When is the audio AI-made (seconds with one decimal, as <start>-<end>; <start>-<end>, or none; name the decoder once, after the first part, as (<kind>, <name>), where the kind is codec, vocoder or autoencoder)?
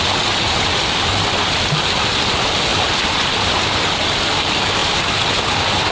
4.8-5.4 (vocoder, BigVGAN v2)